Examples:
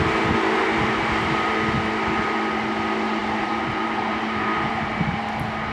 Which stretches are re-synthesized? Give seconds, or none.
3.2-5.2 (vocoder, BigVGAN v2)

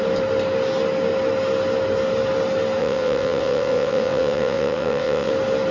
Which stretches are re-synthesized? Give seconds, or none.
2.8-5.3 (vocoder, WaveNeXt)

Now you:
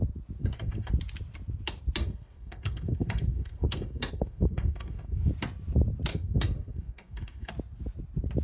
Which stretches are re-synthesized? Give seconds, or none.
0.4-0.9 (codec, SNAC); 2.0-5.3; 6.1-7.5

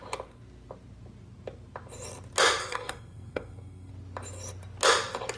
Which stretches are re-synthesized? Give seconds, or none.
2.6-3.9 (codec, SNAC)